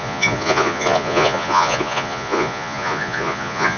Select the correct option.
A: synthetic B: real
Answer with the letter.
A